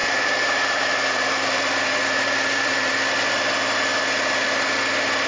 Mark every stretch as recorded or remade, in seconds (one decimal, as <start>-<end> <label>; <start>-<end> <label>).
0.0-2.9 remade; 2.9-5.3 recorded